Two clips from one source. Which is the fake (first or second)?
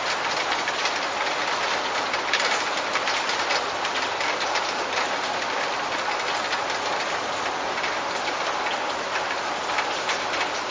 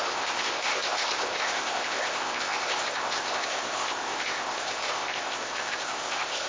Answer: second